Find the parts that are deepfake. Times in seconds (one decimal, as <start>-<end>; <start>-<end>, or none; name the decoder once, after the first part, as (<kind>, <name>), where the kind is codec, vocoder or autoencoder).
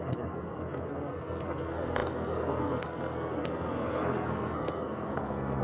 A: 0.0-5.6 (codec, SNAC)